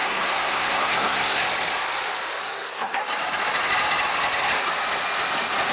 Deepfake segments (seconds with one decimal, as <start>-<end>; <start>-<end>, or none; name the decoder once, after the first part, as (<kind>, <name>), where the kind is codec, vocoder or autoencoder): 0.0-1.4 (codec, SNAC); 2.4-3.0